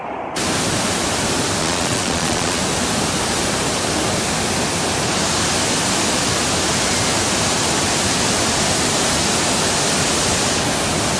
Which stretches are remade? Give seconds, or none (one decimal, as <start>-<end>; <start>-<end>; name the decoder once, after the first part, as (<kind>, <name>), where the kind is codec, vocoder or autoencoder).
1.6-2.6 (vocoder, Vocos)